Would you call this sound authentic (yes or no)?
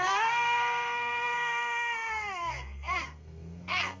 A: no